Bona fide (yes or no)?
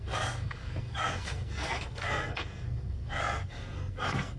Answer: no